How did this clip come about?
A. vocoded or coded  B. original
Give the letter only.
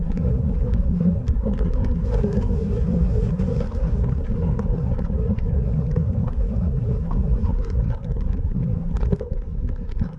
A